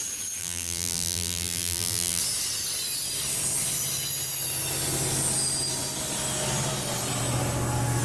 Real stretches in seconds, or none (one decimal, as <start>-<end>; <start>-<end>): 0.0-0.4; 2.2-8.0